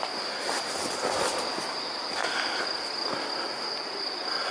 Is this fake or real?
real